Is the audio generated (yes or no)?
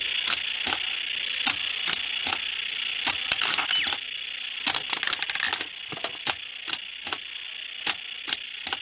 no